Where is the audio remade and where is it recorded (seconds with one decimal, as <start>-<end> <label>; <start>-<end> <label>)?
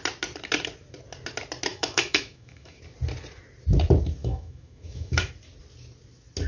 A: 0.0-1.7 recorded; 1.7-2.8 remade; 2.8-4.2 recorded; 4.2-5.3 remade; 5.3-6.5 recorded